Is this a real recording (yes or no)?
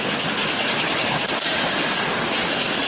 yes